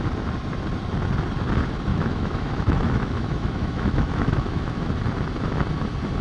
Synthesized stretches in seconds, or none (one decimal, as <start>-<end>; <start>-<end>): 1.9-4.9